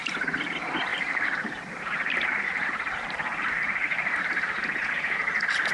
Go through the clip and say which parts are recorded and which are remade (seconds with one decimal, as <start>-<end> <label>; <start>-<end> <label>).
0.0-0.9 recorded; 0.9-4.3 remade; 4.3-5.7 recorded